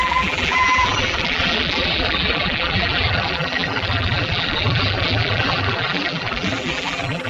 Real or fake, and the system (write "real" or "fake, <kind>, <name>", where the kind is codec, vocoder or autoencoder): fake, vocoder, BigVGAN v2